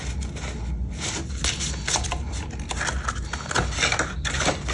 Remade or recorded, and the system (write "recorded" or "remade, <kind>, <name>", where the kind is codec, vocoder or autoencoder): recorded